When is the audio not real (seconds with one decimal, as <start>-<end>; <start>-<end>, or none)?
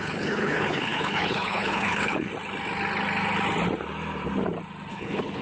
0.0-2.3; 4.9-5.4